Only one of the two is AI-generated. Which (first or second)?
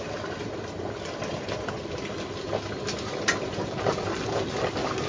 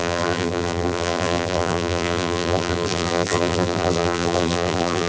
second